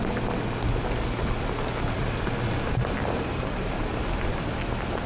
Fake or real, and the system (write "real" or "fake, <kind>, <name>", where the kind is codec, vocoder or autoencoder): real